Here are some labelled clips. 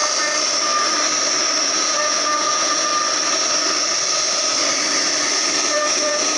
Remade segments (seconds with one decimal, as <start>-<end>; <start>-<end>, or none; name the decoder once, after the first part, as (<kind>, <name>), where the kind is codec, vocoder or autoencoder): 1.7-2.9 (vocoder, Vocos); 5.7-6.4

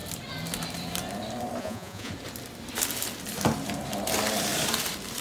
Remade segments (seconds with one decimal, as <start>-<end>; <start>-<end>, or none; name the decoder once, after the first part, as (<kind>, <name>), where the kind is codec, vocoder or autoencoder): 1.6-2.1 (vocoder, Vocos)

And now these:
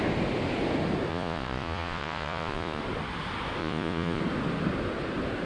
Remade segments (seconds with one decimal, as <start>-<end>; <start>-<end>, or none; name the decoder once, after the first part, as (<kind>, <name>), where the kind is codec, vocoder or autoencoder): 1.1-2.8 (vocoder, Vocos); 3.6-4.2

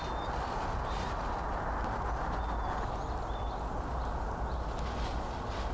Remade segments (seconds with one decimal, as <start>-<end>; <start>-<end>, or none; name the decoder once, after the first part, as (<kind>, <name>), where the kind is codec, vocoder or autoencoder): none

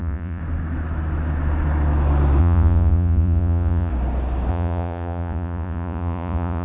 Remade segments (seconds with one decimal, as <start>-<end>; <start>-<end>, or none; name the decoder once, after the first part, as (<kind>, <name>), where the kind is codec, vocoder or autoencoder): 0.0-0.4 (vocoder, Vocos); 2.4-3.9; 4.5-6.6

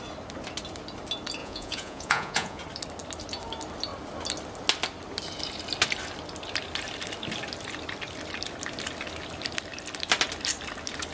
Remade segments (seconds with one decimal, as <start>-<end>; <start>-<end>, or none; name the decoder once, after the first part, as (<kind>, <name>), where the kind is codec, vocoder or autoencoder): 1.4-2.6 (vocoder, Vocos)